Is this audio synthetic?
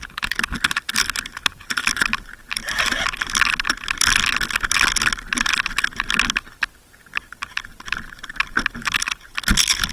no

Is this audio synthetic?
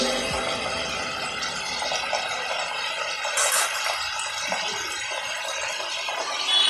no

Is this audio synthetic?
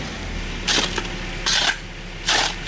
no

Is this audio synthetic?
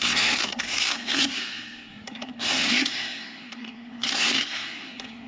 yes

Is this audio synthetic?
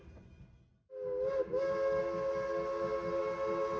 no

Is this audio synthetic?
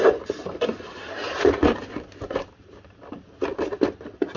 no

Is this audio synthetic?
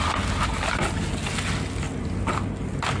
no